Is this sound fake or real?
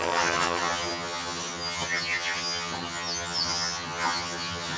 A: fake